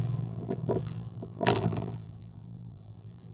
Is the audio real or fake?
fake